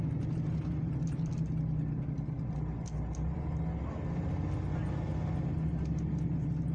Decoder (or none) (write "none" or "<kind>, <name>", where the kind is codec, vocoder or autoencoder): none